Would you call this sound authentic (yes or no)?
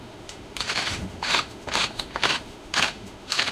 no